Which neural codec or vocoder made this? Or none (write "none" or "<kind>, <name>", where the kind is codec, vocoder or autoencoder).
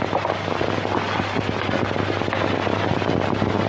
none